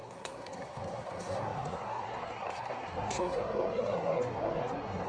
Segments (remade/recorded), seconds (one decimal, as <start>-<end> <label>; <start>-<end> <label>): 0.0-5.1 remade